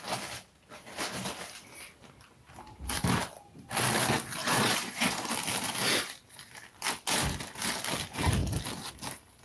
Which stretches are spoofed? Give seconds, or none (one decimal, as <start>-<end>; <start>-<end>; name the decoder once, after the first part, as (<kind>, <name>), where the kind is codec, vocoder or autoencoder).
4.4-5.3 (vocoder, Vocos)